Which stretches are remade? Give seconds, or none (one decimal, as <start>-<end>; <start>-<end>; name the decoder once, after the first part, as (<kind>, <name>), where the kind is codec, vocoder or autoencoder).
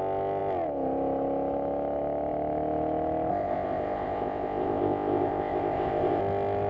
3.3-6.2 (codec, ZipCodec)